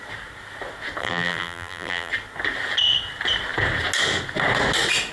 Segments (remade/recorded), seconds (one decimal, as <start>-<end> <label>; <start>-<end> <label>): 0.0-1.0 recorded; 1.0-2.1 remade; 2.1-5.1 recorded